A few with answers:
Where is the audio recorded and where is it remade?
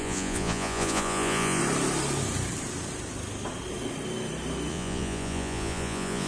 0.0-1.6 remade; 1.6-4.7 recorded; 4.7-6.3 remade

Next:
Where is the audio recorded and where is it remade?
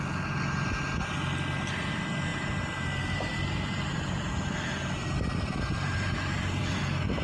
0.0-2.3 recorded; 2.3-6.6 remade; 6.6-7.2 recorded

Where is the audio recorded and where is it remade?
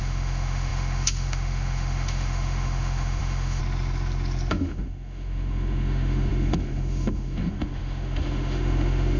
0.0-3.6 remade; 3.6-4.5 recorded; 4.5-9.2 remade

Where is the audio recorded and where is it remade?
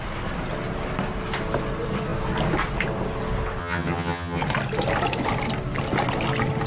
0.0-3.6 recorded; 3.6-4.4 remade; 4.4-6.7 recorded